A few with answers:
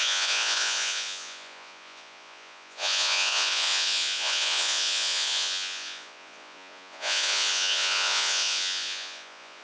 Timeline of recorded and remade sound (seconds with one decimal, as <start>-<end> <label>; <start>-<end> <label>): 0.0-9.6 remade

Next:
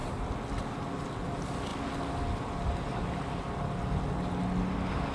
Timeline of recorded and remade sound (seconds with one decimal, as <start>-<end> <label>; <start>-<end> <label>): 0.0-5.1 recorded

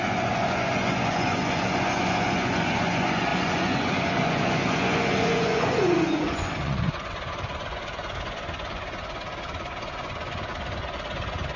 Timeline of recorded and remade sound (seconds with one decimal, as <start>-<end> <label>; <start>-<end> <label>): 0.0-10.5 remade; 10.5-11.6 recorded

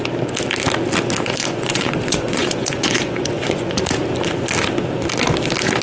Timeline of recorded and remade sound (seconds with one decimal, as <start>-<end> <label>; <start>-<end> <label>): 0.0-1.4 recorded; 1.4-3.8 remade; 3.8-5.8 recorded

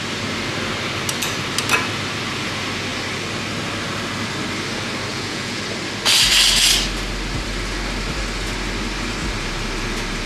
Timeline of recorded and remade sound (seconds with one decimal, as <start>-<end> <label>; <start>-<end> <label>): 0.0-5.1 recorded; 5.1-5.6 remade; 5.6-10.3 recorded

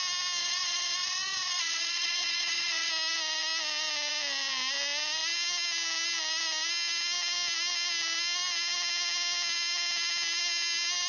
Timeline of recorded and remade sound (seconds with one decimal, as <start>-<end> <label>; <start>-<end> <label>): 0.0-0.4 recorded; 0.4-2.9 remade; 2.9-11.1 recorded

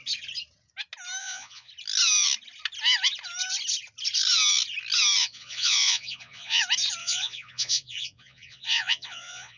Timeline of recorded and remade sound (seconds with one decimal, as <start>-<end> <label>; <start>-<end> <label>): 0.0-1.2 recorded; 1.2-1.7 remade; 1.7-5.2 recorded; 5.2-6.6 remade; 6.6-7.0 recorded; 7.0-9.6 remade